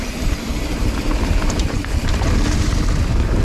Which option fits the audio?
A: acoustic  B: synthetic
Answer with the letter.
A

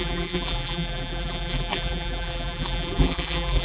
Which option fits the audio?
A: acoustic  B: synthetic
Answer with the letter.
B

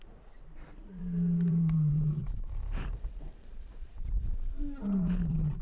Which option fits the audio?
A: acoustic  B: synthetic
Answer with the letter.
B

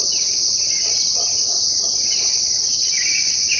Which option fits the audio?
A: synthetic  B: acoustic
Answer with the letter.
B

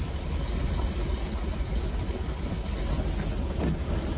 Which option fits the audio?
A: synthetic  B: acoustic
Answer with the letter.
B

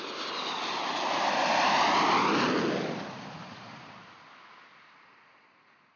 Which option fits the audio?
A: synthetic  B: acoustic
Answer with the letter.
B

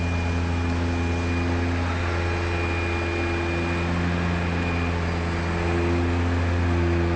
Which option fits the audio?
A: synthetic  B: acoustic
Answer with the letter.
B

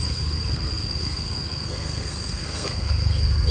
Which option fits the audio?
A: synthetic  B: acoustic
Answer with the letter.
A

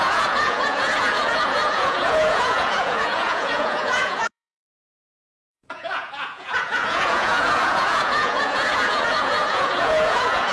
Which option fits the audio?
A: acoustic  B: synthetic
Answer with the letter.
B